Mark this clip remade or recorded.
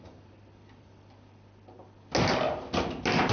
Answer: recorded